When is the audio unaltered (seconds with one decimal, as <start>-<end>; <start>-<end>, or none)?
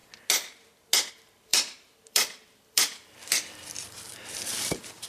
0.0-1.1